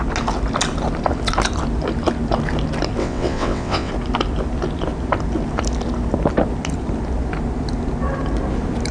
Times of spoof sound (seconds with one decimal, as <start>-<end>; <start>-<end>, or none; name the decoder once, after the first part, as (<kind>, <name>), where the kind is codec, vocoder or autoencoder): 3.0-3.9 (vocoder, WaveNeXt)